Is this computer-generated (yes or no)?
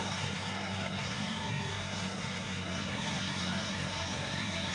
yes